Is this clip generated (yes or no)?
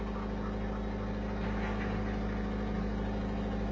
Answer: no